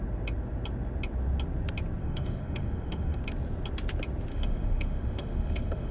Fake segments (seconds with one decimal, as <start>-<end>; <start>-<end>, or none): 2.0-3.2; 4.3-5.9